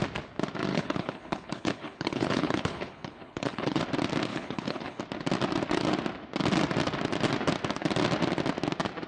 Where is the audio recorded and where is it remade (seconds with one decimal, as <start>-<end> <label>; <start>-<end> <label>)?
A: 0.0-0.7 recorded; 0.7-3.8 remade; 3.8-4.3 recorded; 4.3-5.0 remade; 5.0-9.1 recorded